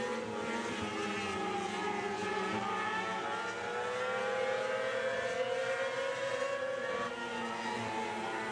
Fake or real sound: real